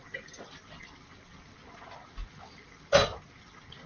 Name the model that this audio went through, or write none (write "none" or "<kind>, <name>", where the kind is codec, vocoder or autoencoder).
none